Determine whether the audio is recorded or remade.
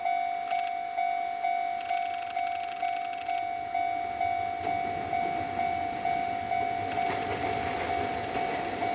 recorded